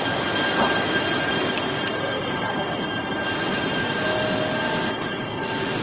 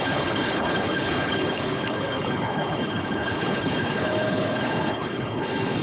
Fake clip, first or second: second